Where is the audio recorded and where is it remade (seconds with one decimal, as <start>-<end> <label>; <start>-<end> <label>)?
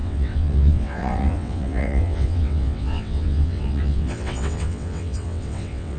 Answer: 0.0-6.0 remade